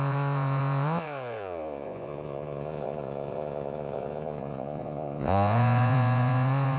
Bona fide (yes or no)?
no